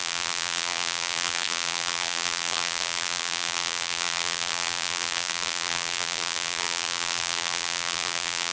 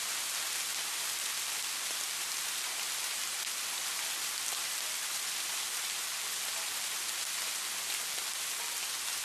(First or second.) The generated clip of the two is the first